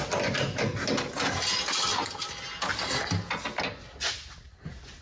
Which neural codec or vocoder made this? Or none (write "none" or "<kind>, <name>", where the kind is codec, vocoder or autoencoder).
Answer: none